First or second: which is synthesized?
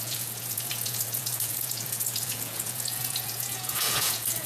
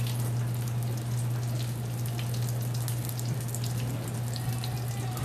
first